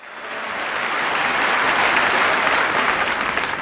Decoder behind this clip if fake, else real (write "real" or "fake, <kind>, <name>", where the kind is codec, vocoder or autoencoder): real